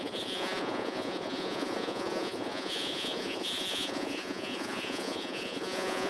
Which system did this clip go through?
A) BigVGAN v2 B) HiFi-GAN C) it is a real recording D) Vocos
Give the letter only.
D